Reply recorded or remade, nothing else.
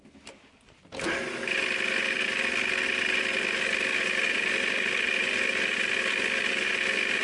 recorded